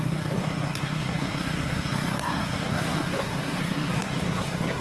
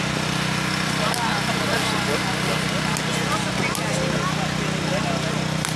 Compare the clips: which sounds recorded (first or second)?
second